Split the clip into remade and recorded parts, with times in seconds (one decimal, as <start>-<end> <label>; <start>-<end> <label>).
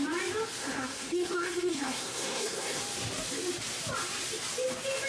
0.0-0.6 recorded; 0.6-2.8 remade; 2.8-5.1 recorded